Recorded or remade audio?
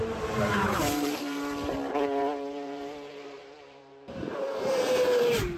remade